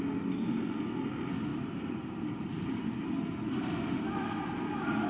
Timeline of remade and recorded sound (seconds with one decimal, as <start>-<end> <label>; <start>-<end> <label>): 0.0-1.5 recorded; 1.5-3.7 remade; 3.7-5.1 recorded